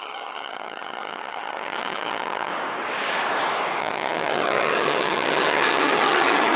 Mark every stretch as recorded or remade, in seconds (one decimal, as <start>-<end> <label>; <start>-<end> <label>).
0.0-2.5 remade; 2.5-3.8 recorded; 3.8-6.6 remade